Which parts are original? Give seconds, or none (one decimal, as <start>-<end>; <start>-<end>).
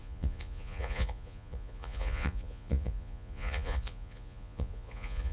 none